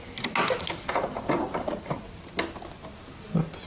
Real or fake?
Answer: real